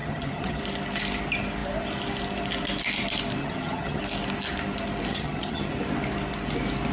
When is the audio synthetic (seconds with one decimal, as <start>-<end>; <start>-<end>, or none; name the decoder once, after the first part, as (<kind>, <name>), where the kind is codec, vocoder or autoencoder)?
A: 0.0-0.6 (vocoder, HiFi-GAN); 3.4-4.0; 5.1-5.7